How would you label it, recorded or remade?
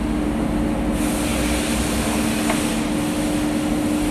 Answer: recorded